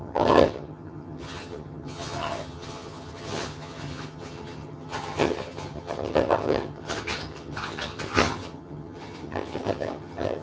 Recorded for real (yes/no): no